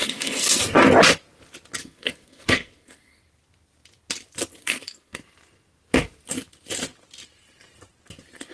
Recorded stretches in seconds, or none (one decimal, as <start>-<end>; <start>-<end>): 0.6-1.8; 3.2-4.6; 5.2-8.5